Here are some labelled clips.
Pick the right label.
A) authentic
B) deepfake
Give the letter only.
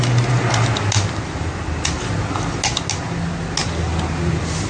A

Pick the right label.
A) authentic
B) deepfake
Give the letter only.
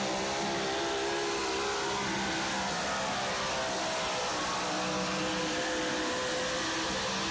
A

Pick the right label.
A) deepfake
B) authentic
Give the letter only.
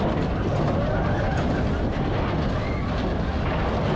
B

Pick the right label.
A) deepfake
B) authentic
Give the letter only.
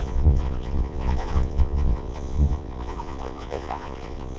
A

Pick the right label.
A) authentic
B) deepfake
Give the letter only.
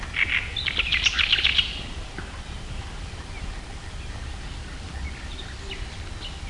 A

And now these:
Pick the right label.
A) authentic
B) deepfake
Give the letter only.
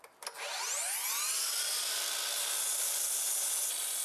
A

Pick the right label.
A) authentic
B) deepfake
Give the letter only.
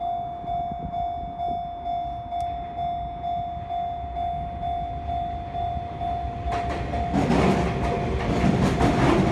A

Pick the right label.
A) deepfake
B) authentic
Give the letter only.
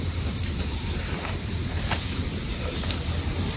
A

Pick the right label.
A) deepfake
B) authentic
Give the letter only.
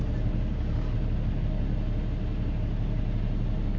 B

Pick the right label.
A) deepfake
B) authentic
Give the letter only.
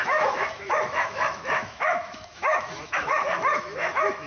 A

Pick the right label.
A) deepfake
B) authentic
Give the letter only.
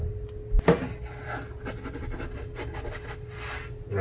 B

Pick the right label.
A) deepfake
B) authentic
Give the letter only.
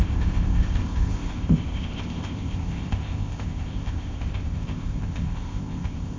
A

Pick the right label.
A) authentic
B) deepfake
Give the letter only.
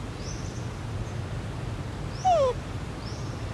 A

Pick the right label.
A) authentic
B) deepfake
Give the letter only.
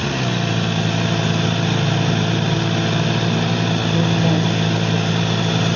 A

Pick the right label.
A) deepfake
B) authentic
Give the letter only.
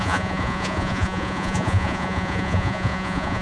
A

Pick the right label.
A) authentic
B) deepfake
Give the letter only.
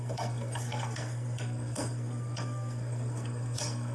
B